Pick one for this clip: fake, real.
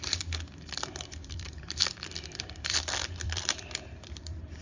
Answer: fake